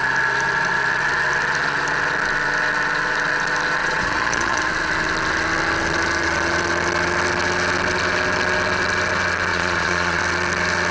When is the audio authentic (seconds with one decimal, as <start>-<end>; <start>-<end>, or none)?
0.0-3.8; 4.6-9.5; 10.2-10.9